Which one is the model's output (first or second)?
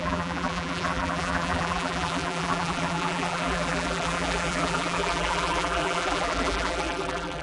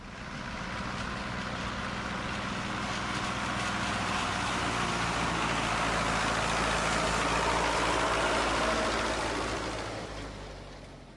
first